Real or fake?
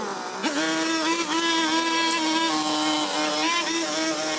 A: real